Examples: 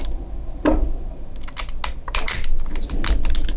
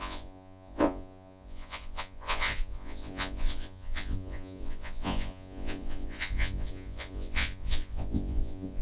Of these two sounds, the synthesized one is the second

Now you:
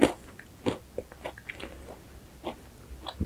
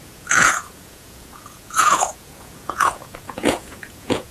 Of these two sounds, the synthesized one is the second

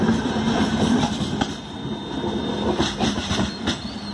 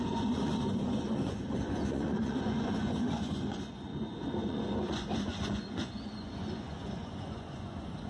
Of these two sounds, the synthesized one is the second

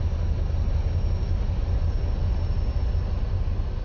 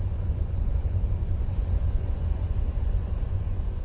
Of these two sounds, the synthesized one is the second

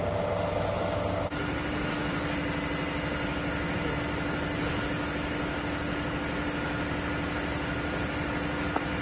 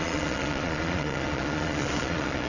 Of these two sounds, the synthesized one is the second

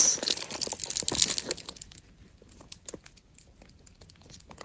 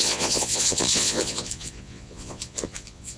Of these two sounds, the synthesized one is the second